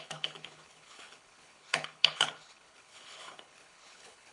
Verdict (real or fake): fake